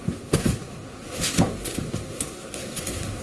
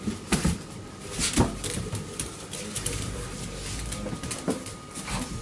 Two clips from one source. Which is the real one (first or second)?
second